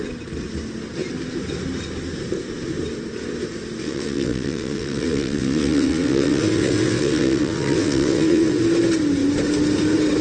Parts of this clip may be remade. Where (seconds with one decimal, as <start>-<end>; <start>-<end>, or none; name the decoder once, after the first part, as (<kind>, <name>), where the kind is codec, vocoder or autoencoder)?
3.8-8.6 (vocoder, WaveNeXt)